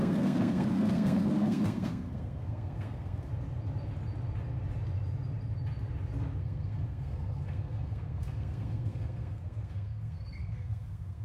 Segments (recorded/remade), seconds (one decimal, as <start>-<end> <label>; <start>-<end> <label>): 0.0-3.3 remade; 3.3-6.4 recorded; 6.4-11.2 remade

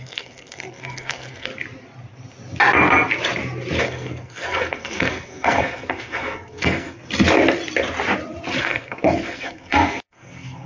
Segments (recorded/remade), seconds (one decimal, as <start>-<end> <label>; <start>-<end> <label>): 0.0-1.5 remade; 1.5-3.8 recorded; 3.8-7.0 remade; 7.0-8.6 recorded; 8.6-10.7 remade